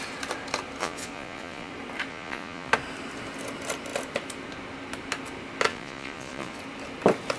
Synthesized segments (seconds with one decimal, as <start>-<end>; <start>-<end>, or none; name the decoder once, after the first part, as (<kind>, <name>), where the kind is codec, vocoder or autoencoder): 0.8-1.7 (vocoder, Vocos); 2.1-2.7; 5.7-6.6